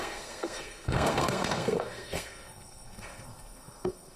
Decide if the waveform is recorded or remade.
remade